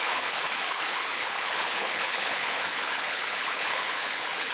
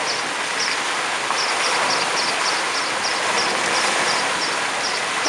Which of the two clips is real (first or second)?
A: second